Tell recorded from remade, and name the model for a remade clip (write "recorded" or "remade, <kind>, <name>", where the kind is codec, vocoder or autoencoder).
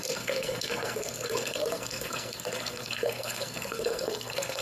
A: remade, codec, SNAC